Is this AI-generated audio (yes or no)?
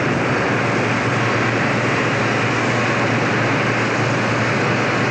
no